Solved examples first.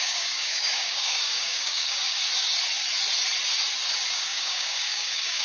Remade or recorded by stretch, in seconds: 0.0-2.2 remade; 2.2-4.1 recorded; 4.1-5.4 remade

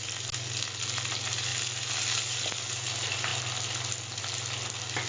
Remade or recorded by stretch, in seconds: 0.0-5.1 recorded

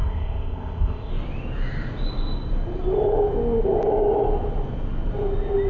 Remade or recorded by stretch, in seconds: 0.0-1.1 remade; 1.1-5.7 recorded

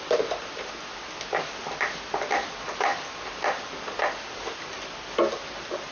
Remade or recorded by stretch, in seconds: 0.0-5.9 recorded

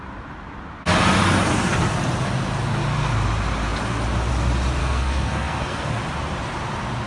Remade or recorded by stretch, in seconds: 0.0-4.8 recorded; 4.8-6.0 remade; 6.0-7.1 recorded

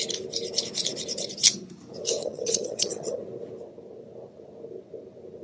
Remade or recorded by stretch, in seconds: 0.0-2.2 recorded; 2.2-3.2 remade; 3.2-5.4 recorded

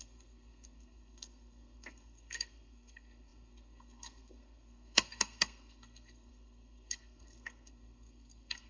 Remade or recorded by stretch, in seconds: 0.0-8.7 remade